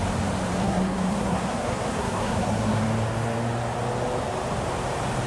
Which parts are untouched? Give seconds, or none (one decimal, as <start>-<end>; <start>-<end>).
0.0-0.6; 2.8-5.3